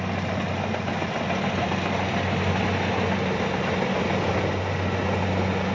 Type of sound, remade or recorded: recorded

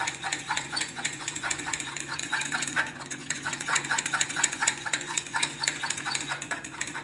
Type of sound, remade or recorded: remade